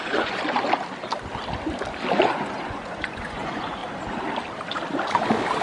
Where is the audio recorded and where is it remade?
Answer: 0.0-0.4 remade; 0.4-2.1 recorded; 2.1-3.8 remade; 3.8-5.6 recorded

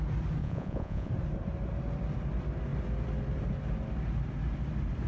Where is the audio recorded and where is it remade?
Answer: 0.0-0.4 recorded; 0.4-1.1 remade; 1.1-5.1 recorded

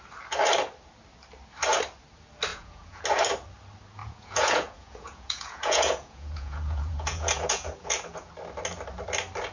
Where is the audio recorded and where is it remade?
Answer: 0.0-2.5 recorded; 2.5-3.0 remade; 3.0-4.0 recorded; 4.0-8.3 remade; 8.3-9.5 recorded

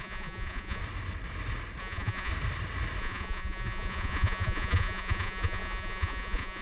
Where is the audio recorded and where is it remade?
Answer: 0.0-0.8 remade; 0.8-1.8 recorded; 1.8-2.3 remade; 2.3-3.0 recorded; 3.0-6.6 remade

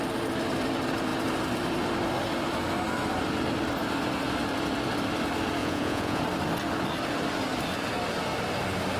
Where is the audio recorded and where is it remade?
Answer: 0.0-5.6 recorded; 5.6-6.2 remade; 6.2-9.0 recorded